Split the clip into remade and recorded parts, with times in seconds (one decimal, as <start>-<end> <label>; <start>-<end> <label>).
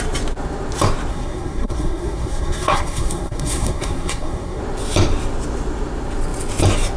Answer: 0.0-1.1 recorded; 1.1-4.6 remade; 4.6-7.0 recorded